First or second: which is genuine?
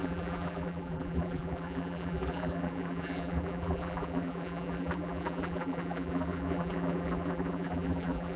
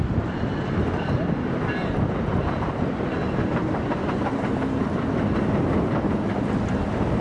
second